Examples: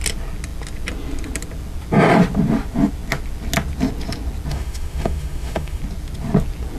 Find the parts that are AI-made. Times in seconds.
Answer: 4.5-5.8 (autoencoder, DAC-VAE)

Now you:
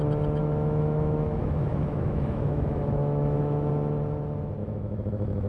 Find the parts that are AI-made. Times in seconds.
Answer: 0.4-3.7 (autoencoder, DAC-VAE); 4.6-5.5

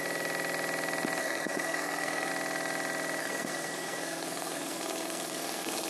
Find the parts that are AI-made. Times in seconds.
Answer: 1.2-2.3 (codec, SNAC); 3.2-5.9

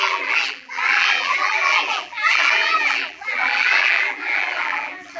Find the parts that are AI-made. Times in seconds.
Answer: 0.0-5.2 (vocoder, BigVGAN v2)